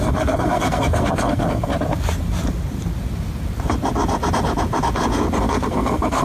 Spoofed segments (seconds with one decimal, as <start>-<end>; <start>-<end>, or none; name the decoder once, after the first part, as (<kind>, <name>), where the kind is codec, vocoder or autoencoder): 0.0-1.7 (codec, SNAC); 5.4-6.2